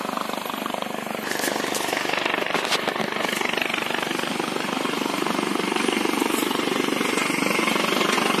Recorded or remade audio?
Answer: recorded